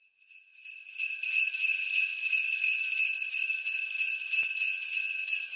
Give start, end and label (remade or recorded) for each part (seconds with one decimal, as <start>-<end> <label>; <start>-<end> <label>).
0.0-0.5 remade; 0.5-1.6 recorded; 1.6-2.1 remade; 2.1-4.5 recorded; 4.5-5.6 remade